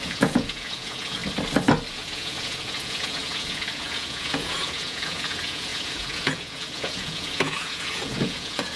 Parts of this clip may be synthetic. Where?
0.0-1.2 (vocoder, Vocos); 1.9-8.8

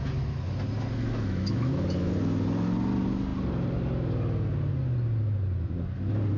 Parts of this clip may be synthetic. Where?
1.0-2.1 (autoencoder, DAC-VAE)

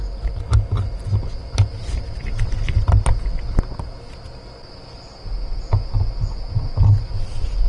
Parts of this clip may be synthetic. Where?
none

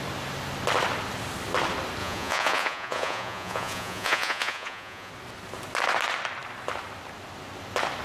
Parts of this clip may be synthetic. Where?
2.0-5.1 (vocoder, Vocos)

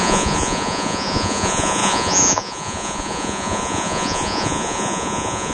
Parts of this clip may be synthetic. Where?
0.0-5.5 (vocoder, Vocos)